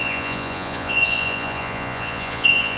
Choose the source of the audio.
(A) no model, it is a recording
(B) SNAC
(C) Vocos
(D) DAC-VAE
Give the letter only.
C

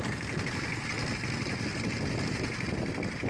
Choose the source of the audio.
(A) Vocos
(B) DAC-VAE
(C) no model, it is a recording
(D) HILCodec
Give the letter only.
C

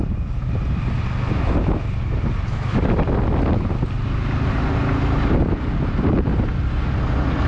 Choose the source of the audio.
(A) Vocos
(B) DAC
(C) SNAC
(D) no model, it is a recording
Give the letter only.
D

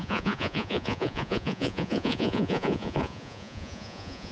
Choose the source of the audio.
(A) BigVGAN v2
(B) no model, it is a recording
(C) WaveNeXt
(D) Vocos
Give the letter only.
D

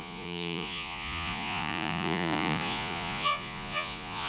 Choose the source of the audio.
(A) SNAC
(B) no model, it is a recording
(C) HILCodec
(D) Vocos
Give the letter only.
D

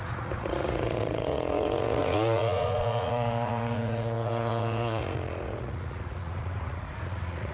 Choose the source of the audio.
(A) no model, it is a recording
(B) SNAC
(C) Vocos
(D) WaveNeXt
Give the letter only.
C